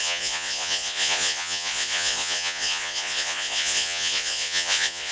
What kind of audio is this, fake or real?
fake